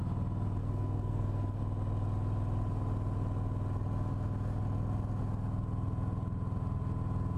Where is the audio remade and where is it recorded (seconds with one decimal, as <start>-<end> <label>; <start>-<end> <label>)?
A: 0.0-0.6 recorded; 0.6-1.6 remade; 1.6-7.4 recorded